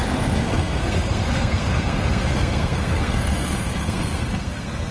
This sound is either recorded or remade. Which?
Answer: remade